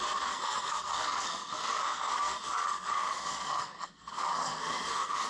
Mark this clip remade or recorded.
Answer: remade